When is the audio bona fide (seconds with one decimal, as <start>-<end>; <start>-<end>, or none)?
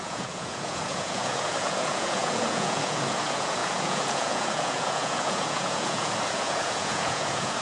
none